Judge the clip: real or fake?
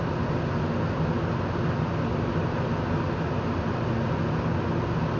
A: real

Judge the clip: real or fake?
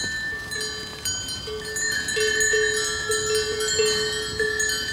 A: real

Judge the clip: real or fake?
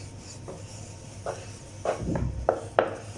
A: real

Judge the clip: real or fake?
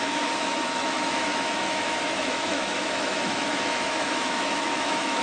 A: fake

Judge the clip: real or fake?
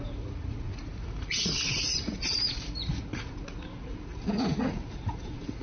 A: fake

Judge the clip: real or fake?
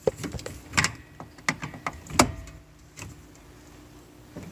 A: real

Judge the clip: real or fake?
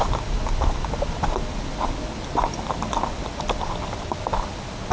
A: real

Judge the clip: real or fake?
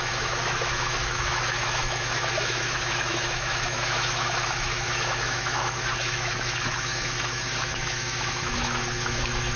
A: fake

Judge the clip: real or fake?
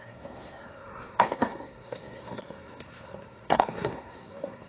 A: fake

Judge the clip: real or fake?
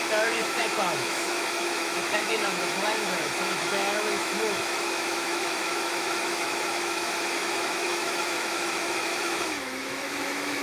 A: fake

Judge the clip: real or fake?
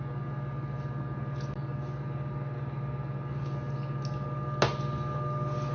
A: real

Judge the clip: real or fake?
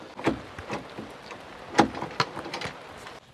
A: real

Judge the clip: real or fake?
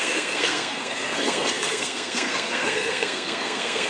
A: fake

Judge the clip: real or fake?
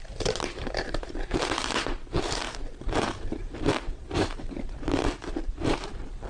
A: fake